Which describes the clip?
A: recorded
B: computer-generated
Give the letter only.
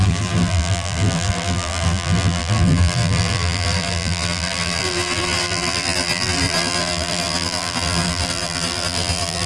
B